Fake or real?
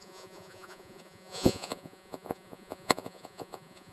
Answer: fake